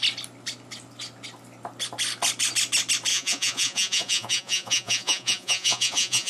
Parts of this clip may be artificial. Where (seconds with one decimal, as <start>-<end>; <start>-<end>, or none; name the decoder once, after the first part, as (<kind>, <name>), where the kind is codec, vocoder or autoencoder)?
3.1-6.3 (vocoder, Vocos)